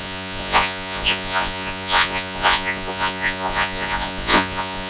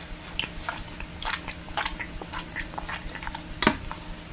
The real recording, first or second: second